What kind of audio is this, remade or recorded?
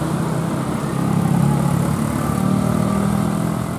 recorded